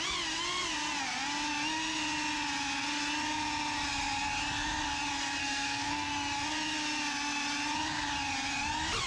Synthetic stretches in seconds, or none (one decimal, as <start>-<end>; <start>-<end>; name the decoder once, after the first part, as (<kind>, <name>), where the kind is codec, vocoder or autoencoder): 5.4-6.1 (codec, SNAC)